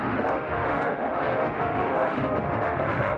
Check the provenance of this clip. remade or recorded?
remade